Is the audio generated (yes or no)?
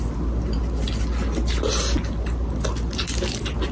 no